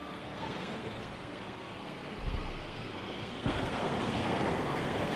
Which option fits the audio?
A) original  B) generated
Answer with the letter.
B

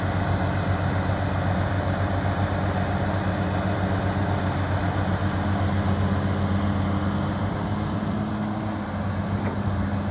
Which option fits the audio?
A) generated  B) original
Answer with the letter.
B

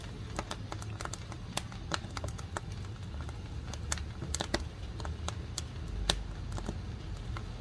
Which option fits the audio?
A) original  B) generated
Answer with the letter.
A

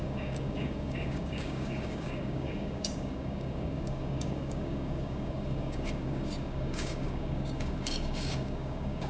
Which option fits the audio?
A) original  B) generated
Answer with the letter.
B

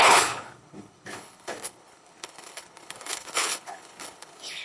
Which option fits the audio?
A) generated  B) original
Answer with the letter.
A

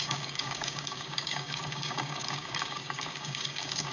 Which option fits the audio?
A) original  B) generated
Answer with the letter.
B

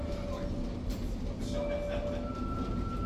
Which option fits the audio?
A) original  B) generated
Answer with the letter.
A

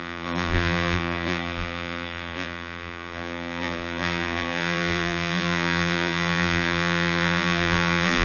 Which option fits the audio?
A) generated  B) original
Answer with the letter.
A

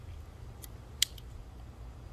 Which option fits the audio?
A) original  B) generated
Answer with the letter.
A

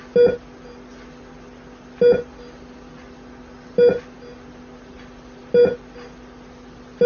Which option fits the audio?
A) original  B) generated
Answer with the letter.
A